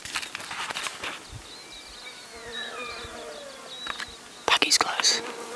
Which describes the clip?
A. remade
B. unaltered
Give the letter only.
B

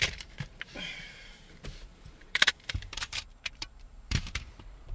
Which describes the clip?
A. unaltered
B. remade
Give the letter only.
B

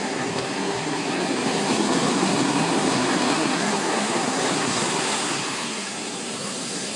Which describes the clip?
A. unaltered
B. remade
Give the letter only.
B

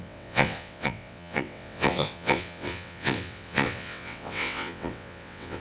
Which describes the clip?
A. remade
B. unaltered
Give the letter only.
A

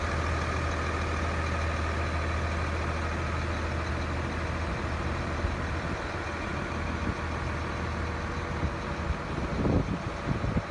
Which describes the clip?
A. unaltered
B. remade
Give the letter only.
A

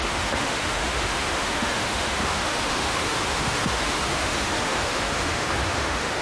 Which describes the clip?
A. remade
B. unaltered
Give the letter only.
A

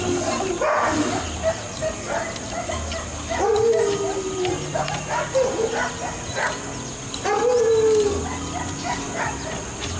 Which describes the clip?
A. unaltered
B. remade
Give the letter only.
A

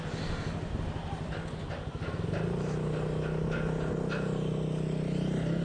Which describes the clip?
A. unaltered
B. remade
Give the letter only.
A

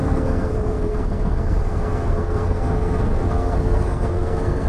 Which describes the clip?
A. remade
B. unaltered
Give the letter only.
A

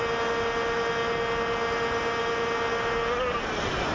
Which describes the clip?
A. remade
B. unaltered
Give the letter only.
B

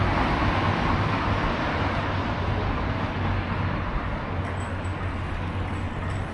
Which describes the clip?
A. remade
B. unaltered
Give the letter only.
B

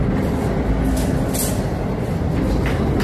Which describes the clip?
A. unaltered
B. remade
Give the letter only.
A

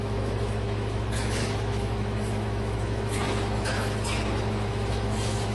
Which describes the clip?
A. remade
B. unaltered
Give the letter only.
A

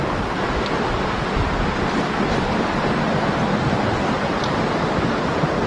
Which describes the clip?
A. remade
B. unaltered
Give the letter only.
B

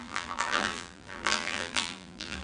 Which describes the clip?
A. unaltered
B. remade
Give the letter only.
B